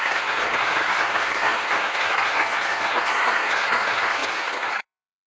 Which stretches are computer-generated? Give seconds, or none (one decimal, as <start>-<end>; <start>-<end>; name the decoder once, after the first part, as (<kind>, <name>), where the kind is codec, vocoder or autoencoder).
0.0-5.3 (codec, SNAC)